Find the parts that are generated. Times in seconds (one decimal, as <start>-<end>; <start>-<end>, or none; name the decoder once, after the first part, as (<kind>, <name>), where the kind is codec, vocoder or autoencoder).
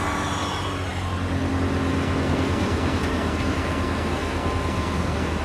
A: 1.9-5.4 (codec, SNAC)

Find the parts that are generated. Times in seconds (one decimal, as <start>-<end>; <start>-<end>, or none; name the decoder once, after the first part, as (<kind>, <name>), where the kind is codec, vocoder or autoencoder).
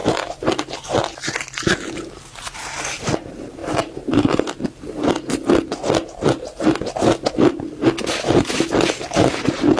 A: none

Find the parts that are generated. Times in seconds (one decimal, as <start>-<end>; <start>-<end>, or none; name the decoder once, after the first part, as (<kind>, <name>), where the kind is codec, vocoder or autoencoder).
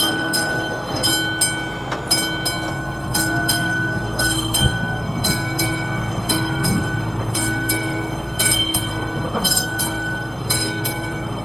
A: 0.0-1.1 (codec, SNAC); 2.7-11.4